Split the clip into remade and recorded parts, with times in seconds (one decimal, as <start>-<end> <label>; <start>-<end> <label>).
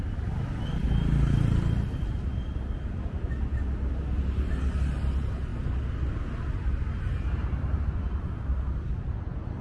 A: 0.0-9.6 recorded